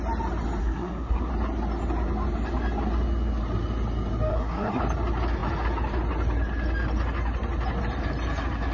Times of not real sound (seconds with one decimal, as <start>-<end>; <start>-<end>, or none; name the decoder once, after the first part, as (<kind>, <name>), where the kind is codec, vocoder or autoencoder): 0.6-1.3 (codec, SNAC); 4.3-4.8